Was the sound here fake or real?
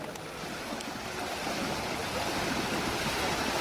real